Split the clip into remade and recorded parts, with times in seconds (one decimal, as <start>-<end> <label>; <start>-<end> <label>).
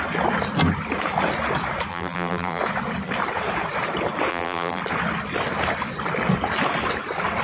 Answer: 0.0-1.9 recorded; 1.9-2.6 remade; 2.6-4.3 recorded; 4.3-4.8 remade; 4.8-7.4 recorded